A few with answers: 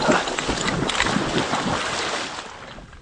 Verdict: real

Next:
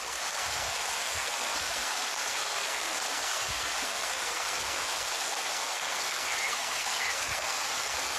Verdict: fake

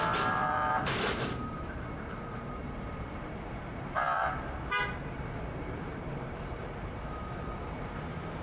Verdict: fake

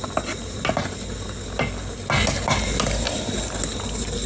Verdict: real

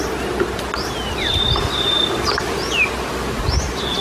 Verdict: real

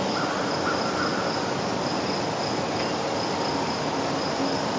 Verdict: real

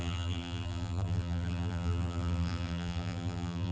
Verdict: fake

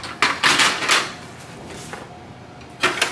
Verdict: real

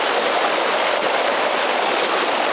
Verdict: real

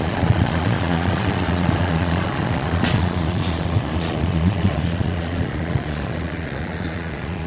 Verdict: fake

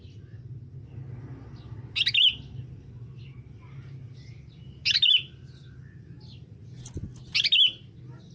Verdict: real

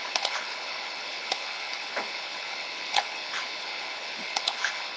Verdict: fake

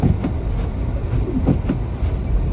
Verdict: real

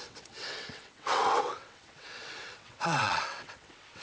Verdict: fake